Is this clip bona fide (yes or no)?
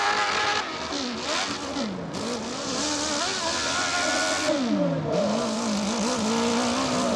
yes